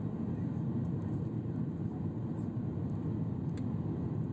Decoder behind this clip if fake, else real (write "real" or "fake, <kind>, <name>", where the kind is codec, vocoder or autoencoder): real